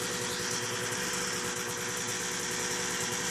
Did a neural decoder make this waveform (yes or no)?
no